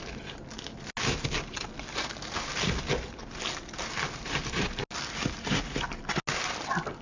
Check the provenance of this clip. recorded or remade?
recorded